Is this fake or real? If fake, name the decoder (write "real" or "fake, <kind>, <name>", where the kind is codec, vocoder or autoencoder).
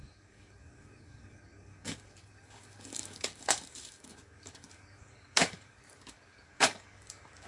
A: fake, codec, DAC